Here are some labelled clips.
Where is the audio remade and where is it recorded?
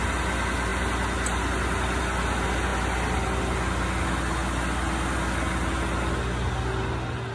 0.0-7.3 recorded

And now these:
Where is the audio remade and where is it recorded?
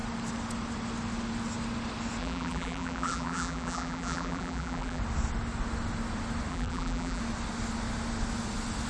0.0-2.2 recorded; 2.2-5.0 remade; 5.0-6.5 recorded; 6.5-7.2 remade; 7.2-8.9 recorded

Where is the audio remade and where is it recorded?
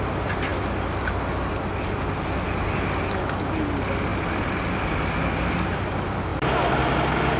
0.0-7.4 recorded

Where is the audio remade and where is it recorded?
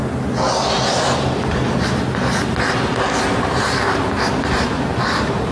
0.0-4.9 recorded; 4.9-5.5 remade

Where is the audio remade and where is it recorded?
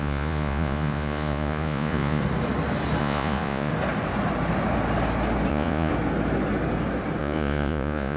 0.0-2.2 remade; 2.2-3.0 recorded; 3.0-3.7 remade; 3.7-5.5 recorded; 5.5-5.9 remade; 5.9-7.2 recorded; 7.2-8.2 remade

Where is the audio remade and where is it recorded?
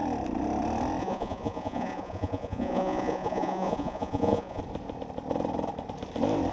0.0-1.0 recorded; 1.0-4.6 remade; 4.6-6.5 recorded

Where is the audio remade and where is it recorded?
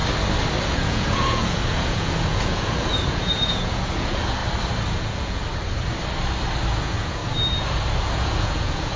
0.0-0.6 recorded; 0.6-4.4 remade; 4.4-5.0 recorded; 5.0-5.4 remade; 5.4-6.7 recorded; 6.7-7.2 remade; 7.2-8.0 recorded; 8.0-9.0 remade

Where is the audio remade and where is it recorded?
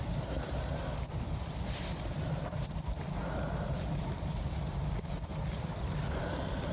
0.0-1.1 recorded; 1.1-2.8 remade; 2.8-5.3 recorded; 5.3-5.9 remade; 5.9-6.7 recorded